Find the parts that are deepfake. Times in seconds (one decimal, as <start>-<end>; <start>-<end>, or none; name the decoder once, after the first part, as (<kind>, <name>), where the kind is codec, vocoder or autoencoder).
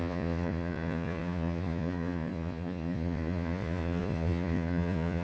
0.0-5.2 (vocoder, Vocos)